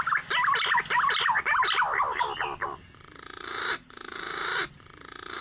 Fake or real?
real